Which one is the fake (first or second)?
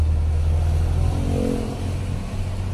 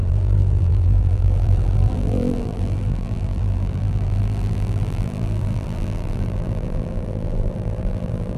second